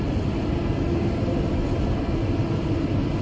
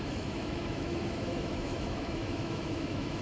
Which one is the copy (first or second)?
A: second